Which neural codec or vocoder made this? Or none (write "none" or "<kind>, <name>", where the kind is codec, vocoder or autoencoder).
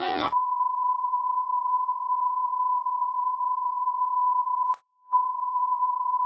vocoder, Vocos